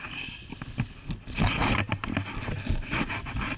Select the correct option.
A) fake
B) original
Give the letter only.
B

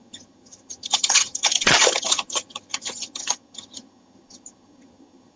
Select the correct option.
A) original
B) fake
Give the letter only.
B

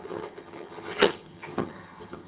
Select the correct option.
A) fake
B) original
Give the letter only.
A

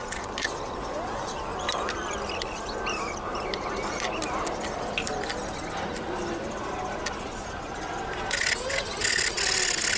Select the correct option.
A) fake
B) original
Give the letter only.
B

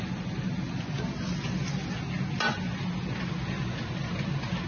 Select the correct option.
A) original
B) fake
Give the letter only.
A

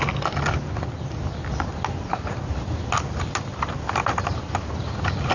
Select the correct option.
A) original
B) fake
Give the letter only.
A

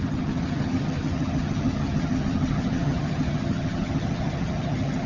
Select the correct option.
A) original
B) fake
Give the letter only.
B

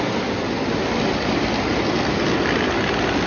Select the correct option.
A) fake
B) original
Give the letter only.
B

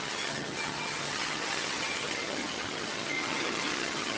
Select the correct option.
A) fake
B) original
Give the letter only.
A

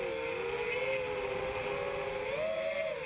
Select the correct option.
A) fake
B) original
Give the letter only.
B